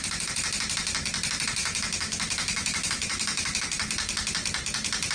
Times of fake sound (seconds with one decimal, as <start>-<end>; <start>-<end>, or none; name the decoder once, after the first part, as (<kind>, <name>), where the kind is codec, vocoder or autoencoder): 1.6-3.6 (autoencoder, DAC-VAE)

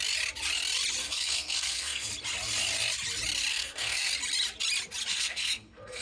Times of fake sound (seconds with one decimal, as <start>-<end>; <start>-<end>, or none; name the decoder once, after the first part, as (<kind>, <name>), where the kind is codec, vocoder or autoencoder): 1.0-2.1 (codec, SNAC); 3.5-4.1; 5.1-6.0

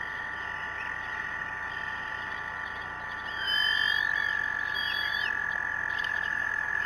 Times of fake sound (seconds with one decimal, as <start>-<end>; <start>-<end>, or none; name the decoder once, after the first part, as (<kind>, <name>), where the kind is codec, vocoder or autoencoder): 6.0-6.9 (autoencoder, DAC-VAE)

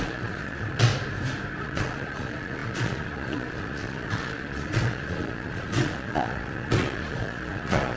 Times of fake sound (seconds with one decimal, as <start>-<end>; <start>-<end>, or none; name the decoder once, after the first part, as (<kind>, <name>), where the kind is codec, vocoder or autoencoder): 0.0-0.9 (vocoder, Vocos); 1.6-8.0

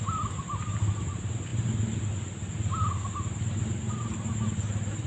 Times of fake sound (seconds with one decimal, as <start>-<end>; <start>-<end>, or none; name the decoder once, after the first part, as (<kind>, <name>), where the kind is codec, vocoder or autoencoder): none

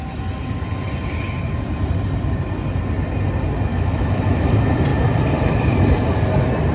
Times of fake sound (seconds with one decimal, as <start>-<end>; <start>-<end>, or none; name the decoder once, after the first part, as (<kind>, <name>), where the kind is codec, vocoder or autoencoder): 3.7-4.5 (autoencoder, DAC-VAE)